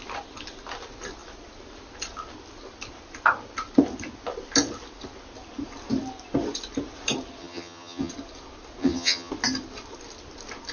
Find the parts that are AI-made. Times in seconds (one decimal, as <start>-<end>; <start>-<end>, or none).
7.4-8.1; 8.8-9.3